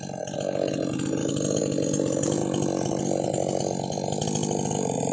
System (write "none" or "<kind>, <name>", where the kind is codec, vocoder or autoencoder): none